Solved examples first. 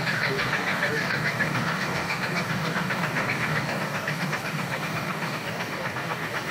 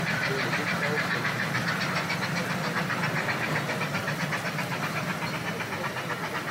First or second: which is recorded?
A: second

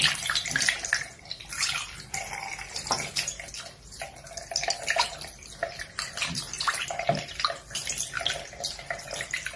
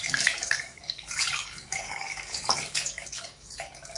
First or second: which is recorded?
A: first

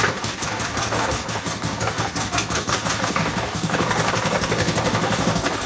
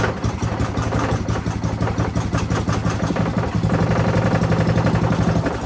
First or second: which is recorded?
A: second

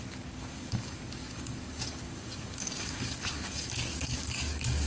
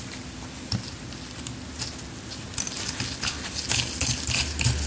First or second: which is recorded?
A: second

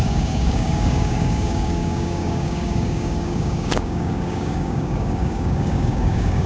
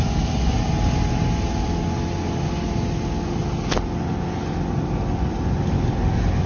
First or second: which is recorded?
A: second